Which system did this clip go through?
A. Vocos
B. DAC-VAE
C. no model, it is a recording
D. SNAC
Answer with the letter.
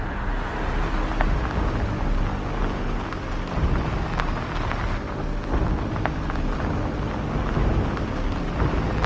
C